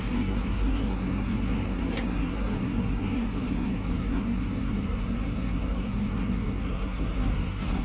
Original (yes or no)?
no